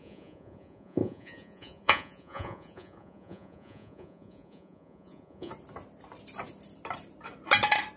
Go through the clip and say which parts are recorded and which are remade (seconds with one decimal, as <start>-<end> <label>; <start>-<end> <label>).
0.0-5.5 remade; 5.5-8.0 recorded